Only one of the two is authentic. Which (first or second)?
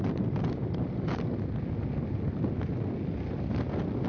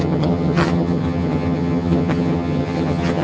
first